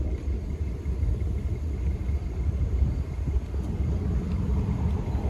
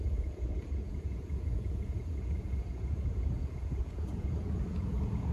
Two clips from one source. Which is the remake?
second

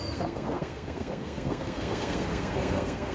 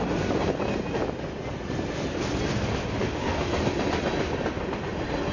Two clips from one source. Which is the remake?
first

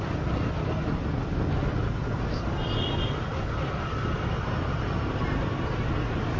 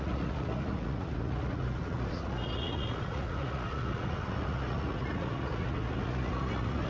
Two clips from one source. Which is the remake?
second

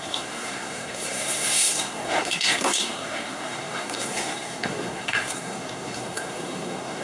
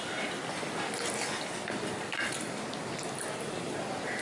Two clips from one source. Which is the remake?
first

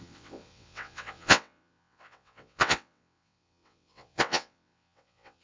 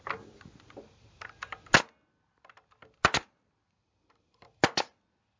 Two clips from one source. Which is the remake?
first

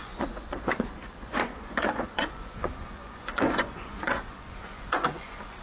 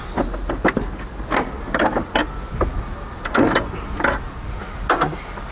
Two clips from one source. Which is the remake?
first